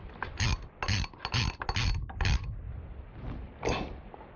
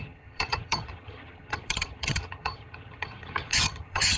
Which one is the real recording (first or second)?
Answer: first